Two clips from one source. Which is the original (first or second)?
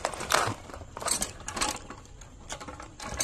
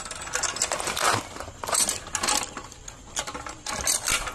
second